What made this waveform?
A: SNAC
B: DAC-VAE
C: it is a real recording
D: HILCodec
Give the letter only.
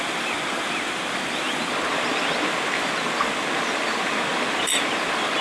C